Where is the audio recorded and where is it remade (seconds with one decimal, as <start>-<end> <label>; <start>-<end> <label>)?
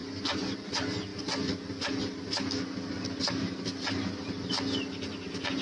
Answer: 0.0-0.7 remade; 0.7-1.1 recorded; 1.1-4.5 remade; 4.5-5.6 recorded